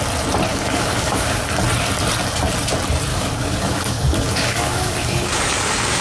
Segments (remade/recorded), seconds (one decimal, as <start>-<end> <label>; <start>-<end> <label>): 0.0-0.5 recorded; 0.5-1.4 remade; 1.4-3.1 recorded; 3.1-6.0 remade

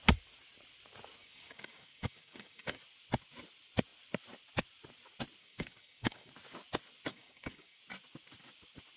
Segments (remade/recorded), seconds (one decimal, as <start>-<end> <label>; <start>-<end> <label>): 0.0-1.2 recorded; 1.2-2.8 remade; 2.8-5.4 recorded; 5.4-6.3 remade; 6.3-7.1 recorded; 7.1-7.8 remade; 7.8-9.0 recorded

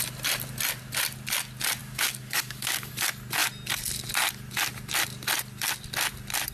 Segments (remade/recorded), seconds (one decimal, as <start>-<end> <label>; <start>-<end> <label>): 0.0-1.8 recorded; 1.8-2.9 remade; 2.9-6.5 recorded